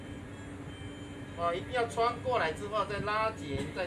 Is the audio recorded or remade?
recorded